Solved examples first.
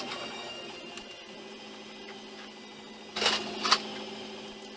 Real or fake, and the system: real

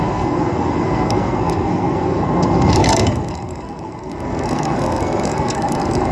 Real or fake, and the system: fake, codec, SNAC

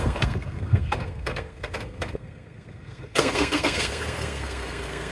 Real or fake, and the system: fake, codec, SNAC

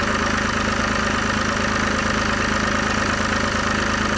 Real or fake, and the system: real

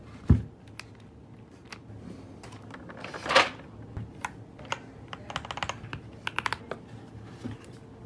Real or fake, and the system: real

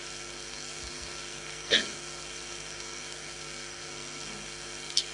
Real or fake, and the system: fake, codec, SNAC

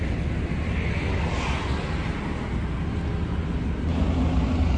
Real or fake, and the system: real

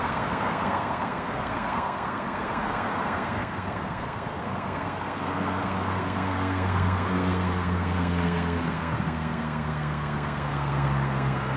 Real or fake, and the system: fake, codec, SNAC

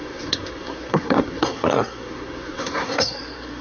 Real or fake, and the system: fake, codec, SNAC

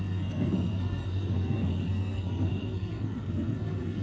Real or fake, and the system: fake, codec, SNAC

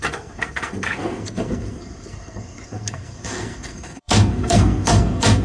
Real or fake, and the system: fake, codec, SNAC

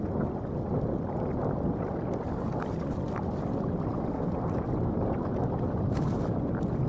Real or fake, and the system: real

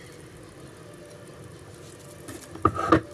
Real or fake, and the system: real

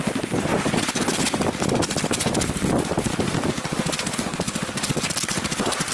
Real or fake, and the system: real